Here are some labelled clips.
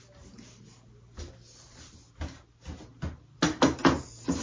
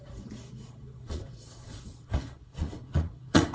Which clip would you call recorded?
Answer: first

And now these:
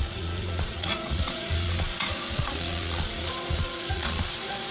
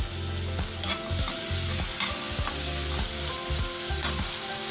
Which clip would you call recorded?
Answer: second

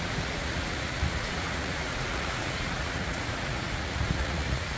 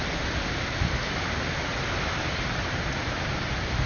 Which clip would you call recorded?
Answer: second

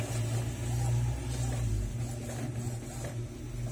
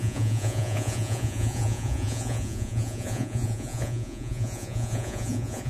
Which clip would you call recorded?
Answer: first